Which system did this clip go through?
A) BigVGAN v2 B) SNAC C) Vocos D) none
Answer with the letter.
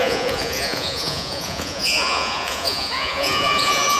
C